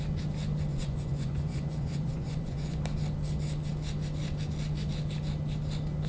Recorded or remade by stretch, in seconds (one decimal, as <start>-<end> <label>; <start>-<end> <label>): 0.0-0.7 recorded; 0.7-2.8 remade; 2.8-6.1 recorded